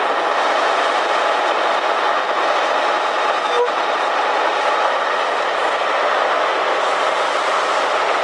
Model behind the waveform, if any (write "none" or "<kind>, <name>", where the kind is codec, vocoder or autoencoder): none